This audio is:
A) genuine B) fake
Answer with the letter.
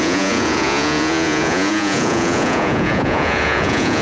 B